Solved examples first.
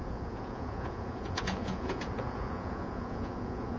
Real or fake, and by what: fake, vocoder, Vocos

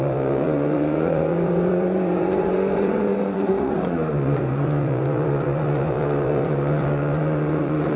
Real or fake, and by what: fake, vocoder, Vocos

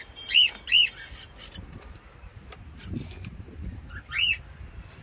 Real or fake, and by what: real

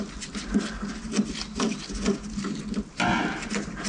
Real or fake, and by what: real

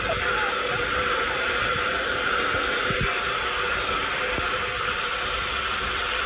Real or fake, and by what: real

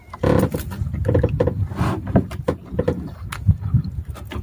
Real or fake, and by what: real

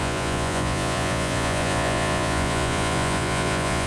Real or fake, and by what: fake, vocoder, Vocos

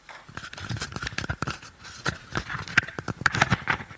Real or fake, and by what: fake, vocoder, BigVGAN v2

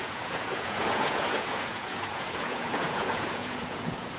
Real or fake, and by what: fake, vocoder, Vocos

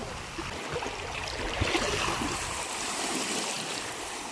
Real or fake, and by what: real